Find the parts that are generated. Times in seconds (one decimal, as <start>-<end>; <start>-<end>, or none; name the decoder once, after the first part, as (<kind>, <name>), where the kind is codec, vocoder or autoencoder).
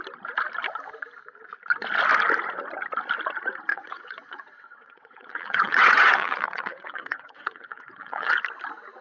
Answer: 3.7-8.3 (vocoder, WaveNeXt)